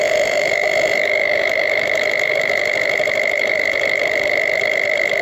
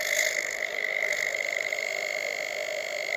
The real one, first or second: second